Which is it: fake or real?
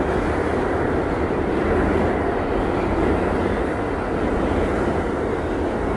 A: real